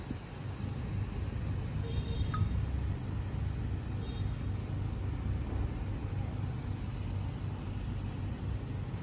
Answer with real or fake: real